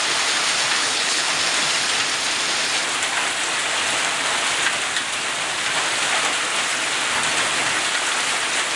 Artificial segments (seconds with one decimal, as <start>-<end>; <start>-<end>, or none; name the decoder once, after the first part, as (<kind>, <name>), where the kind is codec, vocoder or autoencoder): 0.8-1.3 (codec, HILCodec)